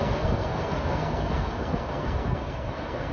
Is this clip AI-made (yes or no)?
yes